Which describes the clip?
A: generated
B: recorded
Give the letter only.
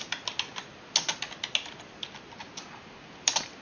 B